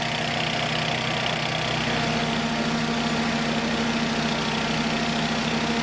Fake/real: real